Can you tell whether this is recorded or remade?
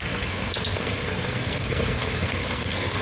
remade